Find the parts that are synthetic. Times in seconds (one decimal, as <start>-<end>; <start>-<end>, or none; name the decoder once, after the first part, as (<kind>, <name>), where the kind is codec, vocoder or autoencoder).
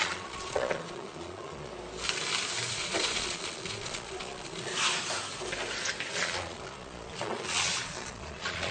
0.0-1.7 (vocoder, Vocos); 2.7-4.7; 6.1-8.7